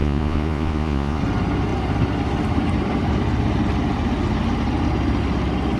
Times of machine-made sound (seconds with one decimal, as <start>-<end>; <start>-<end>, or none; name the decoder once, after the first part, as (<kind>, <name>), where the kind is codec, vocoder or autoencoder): 0.0-1.2 (vocoder, Vocos)